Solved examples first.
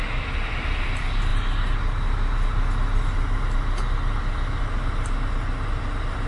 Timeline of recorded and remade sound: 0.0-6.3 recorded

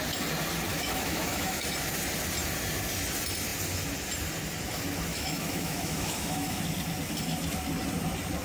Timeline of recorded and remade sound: 0.0-0.7 recorded; 0.7-1.6 remade; 1.6-5.1 recorded; 5.1-6.6 remade; 6.6-8.4 recorded

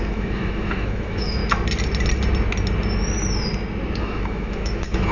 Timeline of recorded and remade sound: 0.0-1.4 remade; 1.4-4.0 recorded; 4.0-5.1 remade

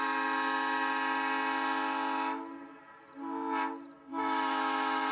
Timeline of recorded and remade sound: 0.0-4.1 recorded; 4.1-5.1 remade

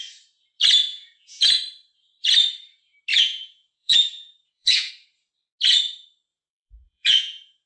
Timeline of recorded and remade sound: 0.0-0.9 recorded; 0.9-1.6 remade; 1.6-3.1 recorded; 3.1-4.9 remade; 4.9-6.3 recorded; 6.3-7.7 remade

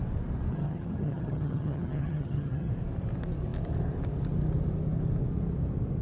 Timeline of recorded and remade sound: 0.0-0.5 recorded; 0.5-2.7 remade; 2.7-6.0 recorded

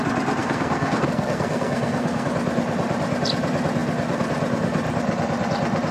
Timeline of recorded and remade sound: 0.0-0.4 recorded; 0.4-2.3 remade; 2.3-5.9 recorded

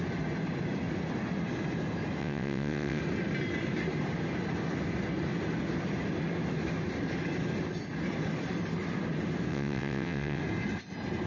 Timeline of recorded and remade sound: 0.0-2.2 recorded; 2.2-3.0 remade; 3.0-9.5 recorded; 9.5-10.4 remade; 10.4-11.3 recorded